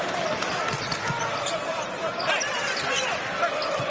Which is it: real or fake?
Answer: real